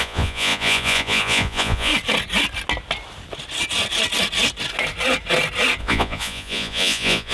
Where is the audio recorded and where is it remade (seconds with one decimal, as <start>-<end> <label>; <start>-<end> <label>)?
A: 0.0-1.9 remade; 1.9-5.8 recorded; 5.8-7.3 remade